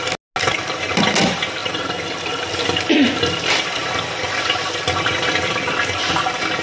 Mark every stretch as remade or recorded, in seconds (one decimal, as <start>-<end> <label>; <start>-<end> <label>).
0.0-1.6 recorded; 1.6-2.2 remade; 2.2-6.6 recorded